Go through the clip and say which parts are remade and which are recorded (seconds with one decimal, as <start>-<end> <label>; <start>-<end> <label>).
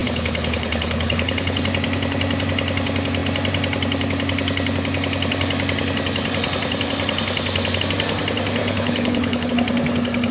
0.0-1.6 remade; 1.6-8.6 recorded; 8.6-9.5 remade; 9.5-10.3 recorded